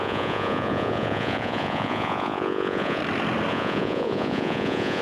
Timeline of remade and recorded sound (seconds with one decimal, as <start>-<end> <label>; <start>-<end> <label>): 0.0-3.0 remade; 3.0-3.5 recorded; 3.5-5.0 remade